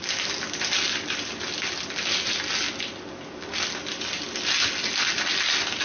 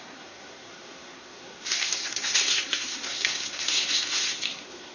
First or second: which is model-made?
second